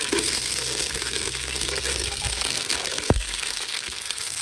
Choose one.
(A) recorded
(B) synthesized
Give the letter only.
B